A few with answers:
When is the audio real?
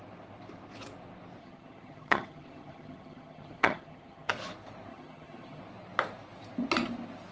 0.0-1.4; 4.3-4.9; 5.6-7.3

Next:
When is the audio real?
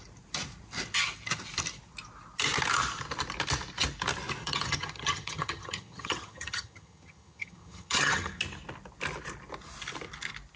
0.0-4.4; 8.4-10.6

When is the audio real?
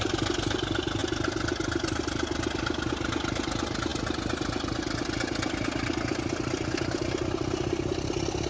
0.0-8.5